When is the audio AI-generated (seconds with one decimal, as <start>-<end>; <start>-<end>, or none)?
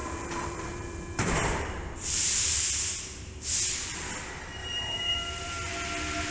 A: 0.0-2.6; 4.6-5.7